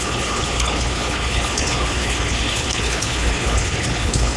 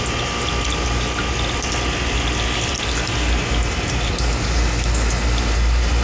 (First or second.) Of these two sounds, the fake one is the first